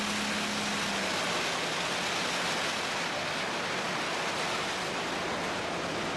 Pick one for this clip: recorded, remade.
recorded